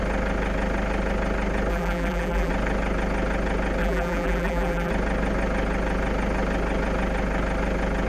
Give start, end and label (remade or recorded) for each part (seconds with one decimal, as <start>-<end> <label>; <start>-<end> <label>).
0.0-1.7 recorded; 1.7-2.5 remade; 2.5-3.8 recorded; 3.8-4.9 remade; 4.9-8.1 recorded